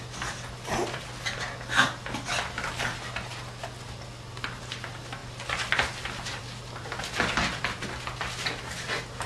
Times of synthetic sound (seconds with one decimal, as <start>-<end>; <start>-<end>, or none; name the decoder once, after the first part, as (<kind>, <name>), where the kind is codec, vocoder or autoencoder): none